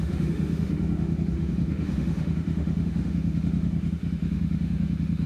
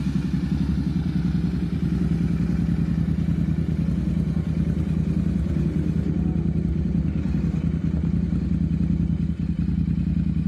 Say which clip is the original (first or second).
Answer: second